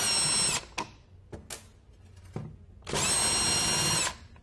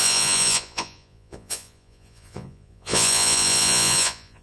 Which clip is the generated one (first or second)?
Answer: second